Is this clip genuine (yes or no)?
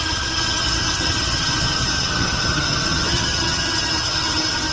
no